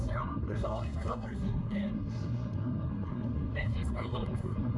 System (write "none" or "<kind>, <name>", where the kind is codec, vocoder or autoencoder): codec, SNAC